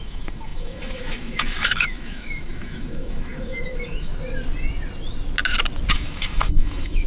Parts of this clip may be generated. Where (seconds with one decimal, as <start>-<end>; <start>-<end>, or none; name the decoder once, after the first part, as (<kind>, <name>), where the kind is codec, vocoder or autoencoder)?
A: 0.0-4.1 (autoencoder, DAC-VAE); 5.9-7.1